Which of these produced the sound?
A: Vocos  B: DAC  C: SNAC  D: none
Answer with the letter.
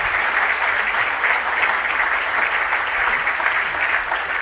D